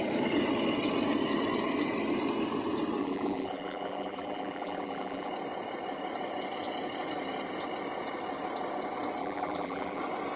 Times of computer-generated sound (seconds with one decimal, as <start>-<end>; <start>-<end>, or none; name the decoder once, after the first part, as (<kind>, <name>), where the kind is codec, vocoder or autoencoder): 3.0-5.3 (vocoder, BigVGAN v2); 9.2-10.0